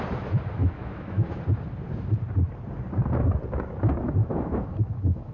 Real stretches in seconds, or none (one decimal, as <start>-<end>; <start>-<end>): 0.0-0.6; 1.4-4.2